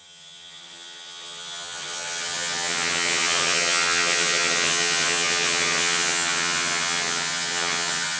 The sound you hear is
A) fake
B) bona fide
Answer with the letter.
A